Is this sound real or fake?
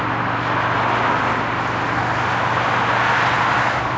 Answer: real